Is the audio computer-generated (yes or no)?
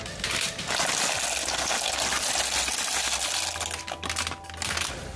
no